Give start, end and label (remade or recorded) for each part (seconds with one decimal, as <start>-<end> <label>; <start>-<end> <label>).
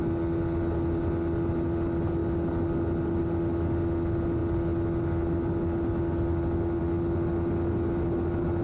0.0-8.6 recorded